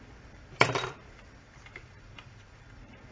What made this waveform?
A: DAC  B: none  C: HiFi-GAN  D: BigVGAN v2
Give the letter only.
D